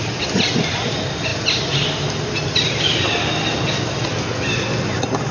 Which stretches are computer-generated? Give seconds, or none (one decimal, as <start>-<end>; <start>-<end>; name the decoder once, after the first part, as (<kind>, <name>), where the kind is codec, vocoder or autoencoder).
none